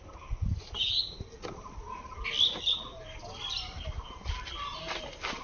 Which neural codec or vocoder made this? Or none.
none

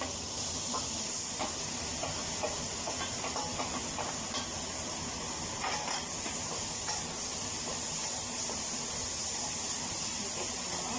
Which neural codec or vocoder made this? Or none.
none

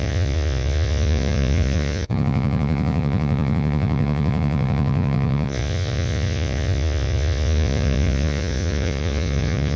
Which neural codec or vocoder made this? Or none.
vocoder, Vocos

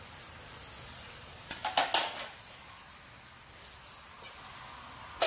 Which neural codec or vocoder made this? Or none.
none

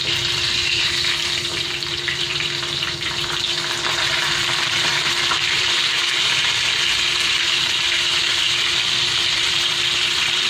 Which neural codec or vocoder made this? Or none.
vocoder, BigVGAN v2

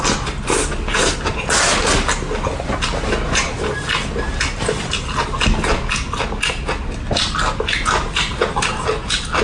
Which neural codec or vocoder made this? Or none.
none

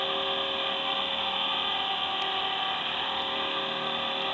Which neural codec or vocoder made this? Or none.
none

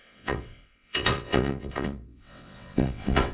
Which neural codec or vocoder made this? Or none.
vocoder, WaveNeXt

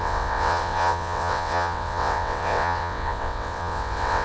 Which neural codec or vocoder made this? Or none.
vocoder, WaveNeXt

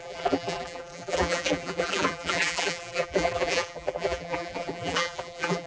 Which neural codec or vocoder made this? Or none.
vocoder, BigVGAN v2